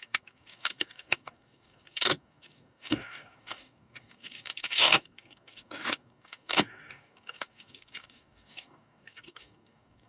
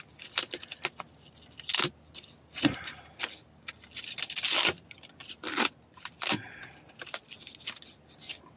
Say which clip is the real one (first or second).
second